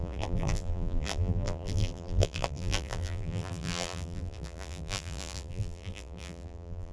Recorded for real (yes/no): no